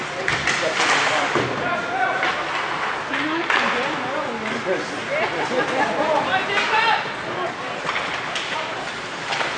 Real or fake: real